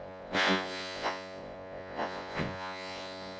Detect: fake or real fake